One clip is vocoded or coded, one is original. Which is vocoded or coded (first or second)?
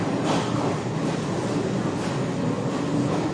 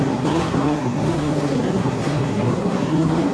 second